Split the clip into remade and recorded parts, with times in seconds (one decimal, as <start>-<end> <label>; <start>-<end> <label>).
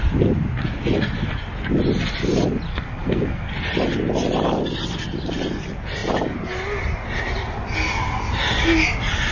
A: 0.0-2.7 recorded; 2.7-3.5 remade; 3.5-9.3 recorded